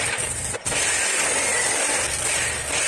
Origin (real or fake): real